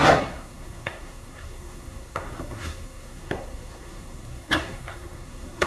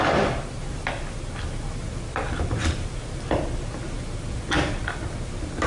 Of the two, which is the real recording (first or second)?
second